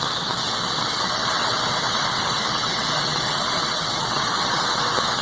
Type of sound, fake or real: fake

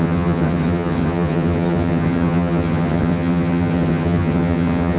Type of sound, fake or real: fake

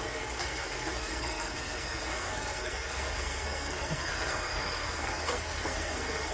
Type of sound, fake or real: fake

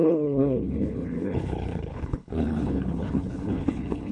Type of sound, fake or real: fake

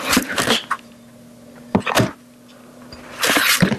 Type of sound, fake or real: real